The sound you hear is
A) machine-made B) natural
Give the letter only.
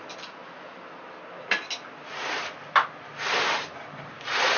B